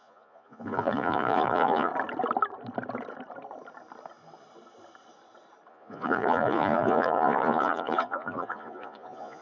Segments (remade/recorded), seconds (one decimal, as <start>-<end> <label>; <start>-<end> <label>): 0.0-1.9 remade; 1.9-5.7 recorded; 5.7-9.4 remade